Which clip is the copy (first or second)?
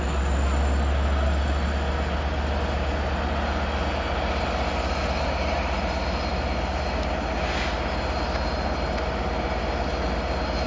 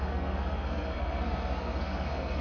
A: second